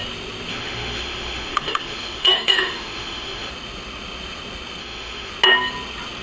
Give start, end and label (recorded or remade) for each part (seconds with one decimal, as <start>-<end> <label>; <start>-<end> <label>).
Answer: 0.0-0.5 recorded; 0.5-3.5 remade; 3.5-4.8 recorded; 4.8-5.3 remade; 5.3-6.2 recorded